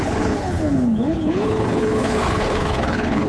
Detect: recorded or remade remade